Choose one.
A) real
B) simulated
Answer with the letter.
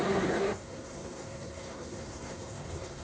B